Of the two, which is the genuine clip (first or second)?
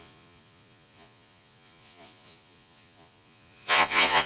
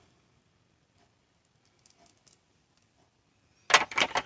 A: second